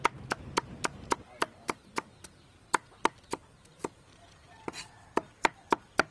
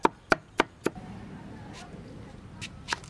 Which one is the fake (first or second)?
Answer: first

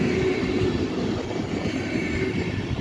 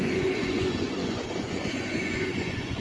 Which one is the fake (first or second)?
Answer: second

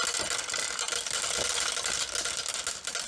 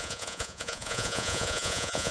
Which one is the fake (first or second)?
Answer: second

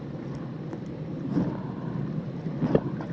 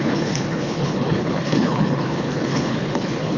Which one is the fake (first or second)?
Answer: second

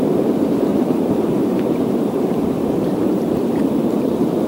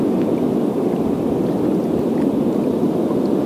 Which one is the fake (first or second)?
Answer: first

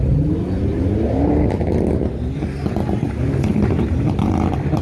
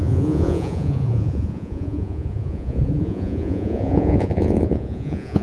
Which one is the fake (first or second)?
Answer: second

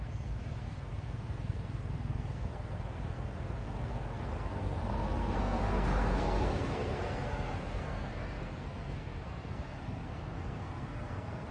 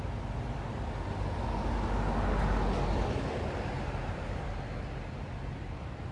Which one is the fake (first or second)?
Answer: first